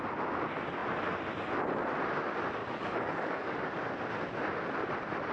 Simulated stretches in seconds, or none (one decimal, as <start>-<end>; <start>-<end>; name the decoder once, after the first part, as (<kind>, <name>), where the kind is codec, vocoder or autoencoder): 2.6-3.7 (codec, DAC)